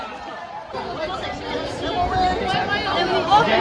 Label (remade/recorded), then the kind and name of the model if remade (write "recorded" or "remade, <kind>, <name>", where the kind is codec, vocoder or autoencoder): recorded